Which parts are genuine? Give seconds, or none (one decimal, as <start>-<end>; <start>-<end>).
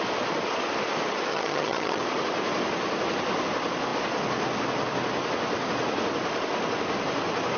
0.0-1.3; 2.0-7.6